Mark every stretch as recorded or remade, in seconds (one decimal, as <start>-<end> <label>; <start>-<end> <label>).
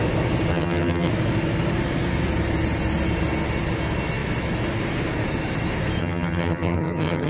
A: 0.0-0.5 recorded; 0.5-1.1 remade; 1.1-6.0 recorded; 6.0-7.3 remade